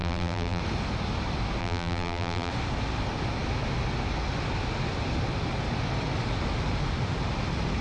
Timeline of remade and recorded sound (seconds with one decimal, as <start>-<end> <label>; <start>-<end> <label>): 0.0-0.6 remade; 0.6-1.6 recorded; 1.6-2.5 remade; 2.5-7.8 recorded